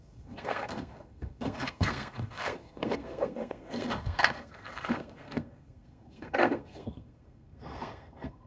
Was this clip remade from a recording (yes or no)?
yes